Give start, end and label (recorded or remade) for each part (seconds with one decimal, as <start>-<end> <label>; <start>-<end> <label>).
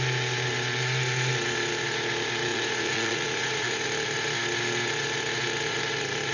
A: 0.0-2.5 recorded; 2.5-3.8 remade; 3.8-6.3 recorded